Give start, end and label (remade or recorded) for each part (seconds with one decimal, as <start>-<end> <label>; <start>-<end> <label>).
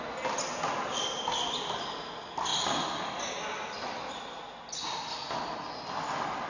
0.0-6.5 recorded